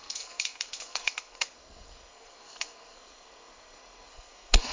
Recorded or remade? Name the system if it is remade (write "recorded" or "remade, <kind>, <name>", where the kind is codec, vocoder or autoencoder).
remade, codec, SNAC